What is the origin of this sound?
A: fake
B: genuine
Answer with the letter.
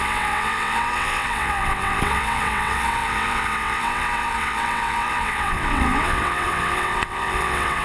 A